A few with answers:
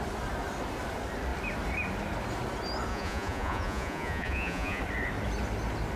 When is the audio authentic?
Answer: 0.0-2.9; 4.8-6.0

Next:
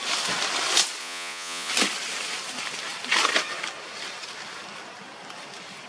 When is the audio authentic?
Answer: 0.0-1.0; 1.7-5.9

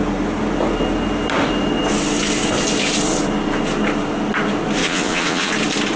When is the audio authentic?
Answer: 0.0-4.8; 5.5-6.0

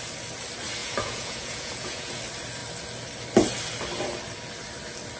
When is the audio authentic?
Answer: 0.0-0.8; 2.1-5.2

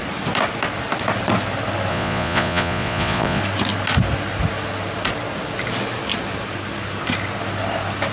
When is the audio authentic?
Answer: 0.0-1.9; 3.4-8.1

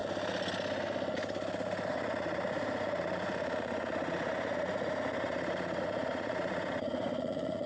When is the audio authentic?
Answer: 0.0-1.9